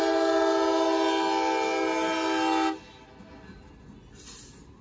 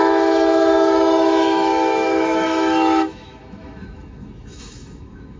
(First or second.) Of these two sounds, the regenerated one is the second